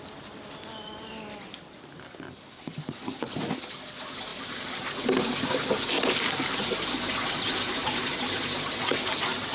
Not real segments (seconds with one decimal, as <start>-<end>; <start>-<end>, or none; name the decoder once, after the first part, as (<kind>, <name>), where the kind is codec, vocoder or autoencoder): none